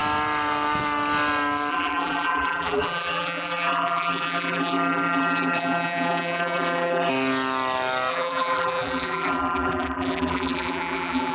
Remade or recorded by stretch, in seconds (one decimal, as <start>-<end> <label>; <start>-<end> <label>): 0.0-1.7 recorded; 1.7-7.1 remade; 7.1-8.1 recorded; 8.1-11.3 remade